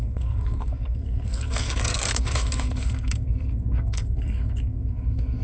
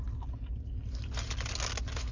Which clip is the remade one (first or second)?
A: first